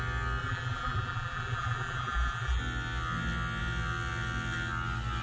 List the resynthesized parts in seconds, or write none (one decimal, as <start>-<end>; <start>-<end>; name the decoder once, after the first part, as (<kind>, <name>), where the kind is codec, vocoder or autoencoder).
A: 0.4-2.6 (vocoder, BigVGAN v2)

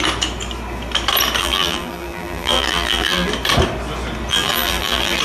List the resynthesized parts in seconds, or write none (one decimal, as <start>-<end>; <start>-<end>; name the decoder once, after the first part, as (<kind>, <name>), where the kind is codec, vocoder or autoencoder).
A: 1.4-3.3 (vocoder, BigVGAN v2); 4.3-5.2

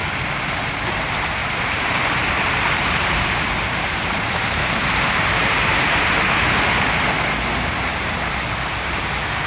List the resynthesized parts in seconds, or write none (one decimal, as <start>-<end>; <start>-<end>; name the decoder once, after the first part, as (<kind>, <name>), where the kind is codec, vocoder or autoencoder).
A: 1.4-6.3 (vocoder, BigVGAN v2)

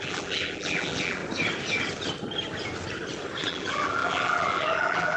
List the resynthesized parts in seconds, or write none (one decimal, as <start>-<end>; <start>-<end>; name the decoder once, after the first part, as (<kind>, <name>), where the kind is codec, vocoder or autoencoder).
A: 0.0-1.2 (vocoder, BigVGAN v2); 3.4-5.2

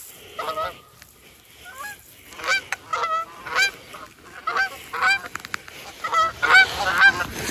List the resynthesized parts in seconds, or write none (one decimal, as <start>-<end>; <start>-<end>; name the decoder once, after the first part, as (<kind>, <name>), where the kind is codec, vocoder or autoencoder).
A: none

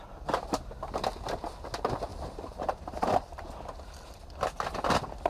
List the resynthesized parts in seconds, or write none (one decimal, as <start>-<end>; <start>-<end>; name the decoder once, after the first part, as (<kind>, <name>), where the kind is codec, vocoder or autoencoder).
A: 2.1-3.1 (vocoder, BigVGAN v2)

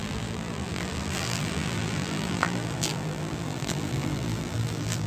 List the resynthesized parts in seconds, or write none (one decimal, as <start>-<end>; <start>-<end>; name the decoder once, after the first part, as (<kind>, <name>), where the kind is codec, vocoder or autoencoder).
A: 0.0-5.1 (vocoder, BigVGAN v2)

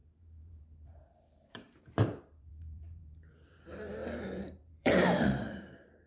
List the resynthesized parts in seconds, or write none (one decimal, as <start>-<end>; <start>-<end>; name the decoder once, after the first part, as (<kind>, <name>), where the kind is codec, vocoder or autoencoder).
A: 0.0-4.0 (vocoder, BigVGAN v2); 4.7-6.1